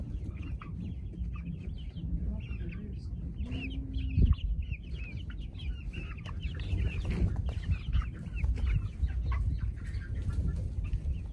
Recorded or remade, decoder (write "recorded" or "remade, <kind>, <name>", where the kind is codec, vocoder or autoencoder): recorded